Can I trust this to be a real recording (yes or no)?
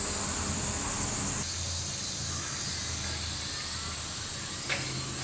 yes